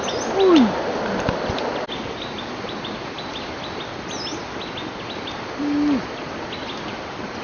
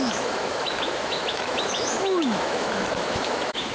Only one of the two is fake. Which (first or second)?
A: second